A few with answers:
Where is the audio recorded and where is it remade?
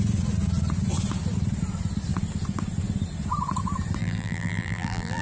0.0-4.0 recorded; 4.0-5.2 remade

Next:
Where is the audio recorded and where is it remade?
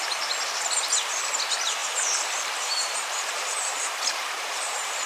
0.0-1.8 recorded; 1.8-5.1 remade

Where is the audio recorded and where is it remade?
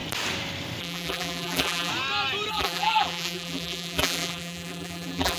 0.0-0.8 recorded; 0.8-1.9 remade; 1.9-2.5 recorded; 2.5-5.4 remade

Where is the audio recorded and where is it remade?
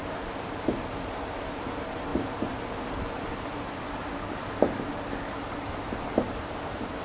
0.0-4.0 remade; 4.0-5.4 recorded; 5.4-7.0 remade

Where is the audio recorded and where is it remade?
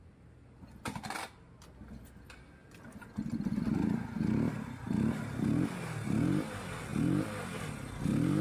0.0-8.4 recorded